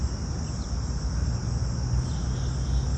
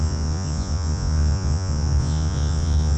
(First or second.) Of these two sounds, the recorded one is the first